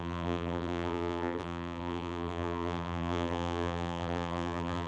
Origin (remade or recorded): remade